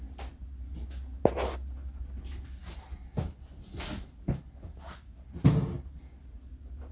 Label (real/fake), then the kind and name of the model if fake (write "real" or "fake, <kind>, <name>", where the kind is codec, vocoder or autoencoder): real